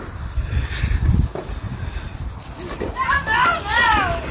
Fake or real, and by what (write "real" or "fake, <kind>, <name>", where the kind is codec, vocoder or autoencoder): real